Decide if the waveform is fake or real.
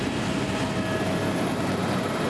real